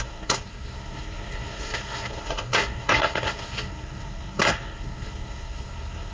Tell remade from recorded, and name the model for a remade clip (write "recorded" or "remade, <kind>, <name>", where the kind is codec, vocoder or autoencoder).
remade, codec, SNAC